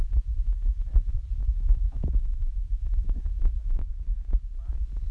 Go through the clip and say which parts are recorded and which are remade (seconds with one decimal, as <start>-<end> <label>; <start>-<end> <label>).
0.0-1.4 recorded; 1.4-3.9 remade; 3.9-5.1 recorded